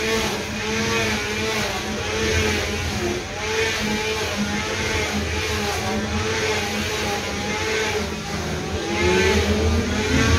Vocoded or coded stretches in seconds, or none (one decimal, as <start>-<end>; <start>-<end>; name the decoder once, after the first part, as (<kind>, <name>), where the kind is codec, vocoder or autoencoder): none